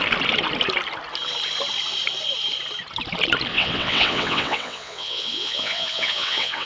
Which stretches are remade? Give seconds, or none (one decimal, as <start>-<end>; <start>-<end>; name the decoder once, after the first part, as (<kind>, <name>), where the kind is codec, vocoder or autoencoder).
3.5-6.7 (vocoder, WaveNeXt)